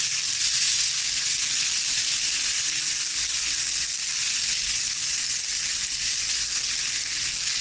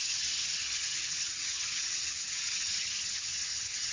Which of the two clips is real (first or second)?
first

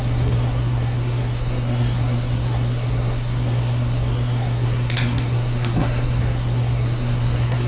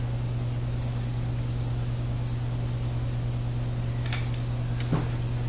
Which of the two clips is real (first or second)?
second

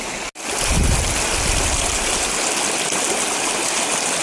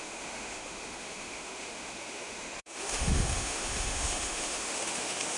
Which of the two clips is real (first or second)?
first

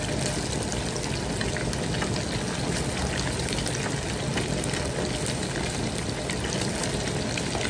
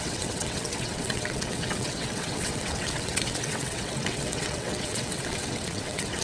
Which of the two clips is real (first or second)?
first